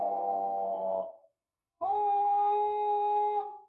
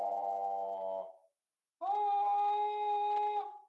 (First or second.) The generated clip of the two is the first